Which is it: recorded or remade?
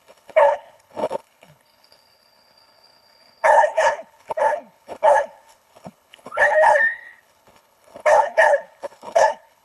remade